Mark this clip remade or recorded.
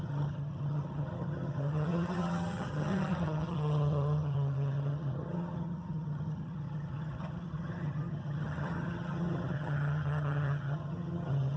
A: remade